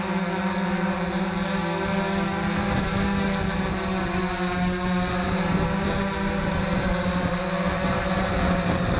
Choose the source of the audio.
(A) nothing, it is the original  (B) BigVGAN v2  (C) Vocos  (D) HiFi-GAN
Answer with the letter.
A